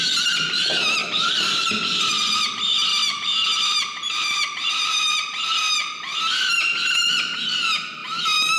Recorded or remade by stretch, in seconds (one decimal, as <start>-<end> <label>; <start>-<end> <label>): 0.0-1.0 recorded; 1.0-2.3 remade; 2.3-8.6 recorded